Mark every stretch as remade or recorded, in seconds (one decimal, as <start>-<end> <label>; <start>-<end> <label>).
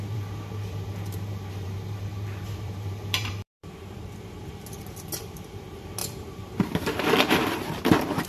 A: 0.0-8.3 remade